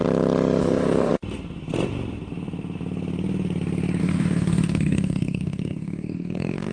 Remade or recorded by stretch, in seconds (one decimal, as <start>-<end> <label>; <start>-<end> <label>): 0.0-0.6 recorded; 0.6-1.1 remade; 1.1-4.0 recorded; 4.0-6.7 remade